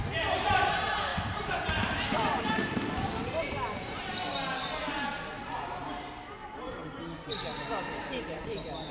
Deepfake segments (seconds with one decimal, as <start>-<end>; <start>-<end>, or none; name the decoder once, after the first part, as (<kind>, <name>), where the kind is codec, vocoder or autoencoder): 0.0-6.8 (vocoder, BigVGAN v2); 8.0-8.9